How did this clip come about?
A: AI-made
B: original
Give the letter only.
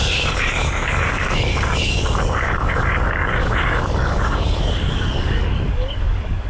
A